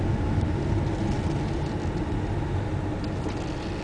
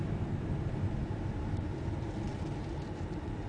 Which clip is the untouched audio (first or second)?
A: first